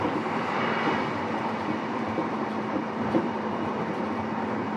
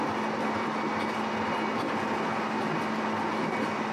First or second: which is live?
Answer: second